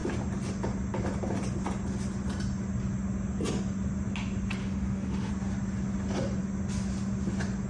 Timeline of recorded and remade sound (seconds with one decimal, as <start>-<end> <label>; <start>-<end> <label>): 0.0-4.6 recorded; 4.6-5.3 remade; 5.3-7.7 recorded